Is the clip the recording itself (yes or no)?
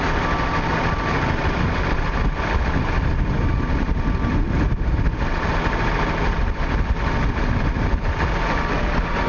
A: yes